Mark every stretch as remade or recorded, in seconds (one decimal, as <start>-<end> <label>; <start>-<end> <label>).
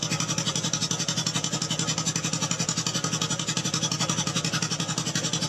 0.0-5.5 recorded